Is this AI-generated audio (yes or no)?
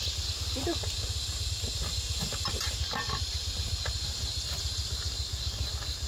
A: no